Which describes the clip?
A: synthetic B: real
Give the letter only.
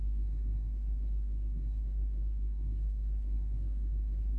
A